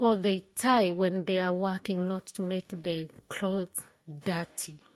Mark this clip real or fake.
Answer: fake